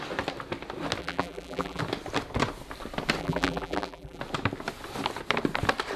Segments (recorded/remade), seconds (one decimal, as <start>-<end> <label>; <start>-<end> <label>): 0.0-1.0 recorded; 1.0-1.8 remade; 1.8-3.2 recorded; 3.2-4.2 remade; 4.2-6.0 recorded